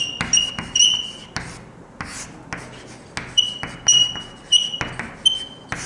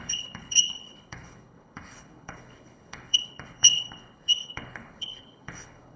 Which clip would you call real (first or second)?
first